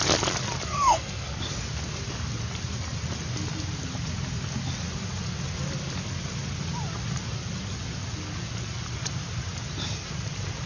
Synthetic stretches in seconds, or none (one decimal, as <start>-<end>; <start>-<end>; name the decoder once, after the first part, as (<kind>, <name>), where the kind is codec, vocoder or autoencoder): 0.7-1.4 (codec, SNAC)